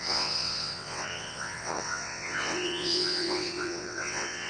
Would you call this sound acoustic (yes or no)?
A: no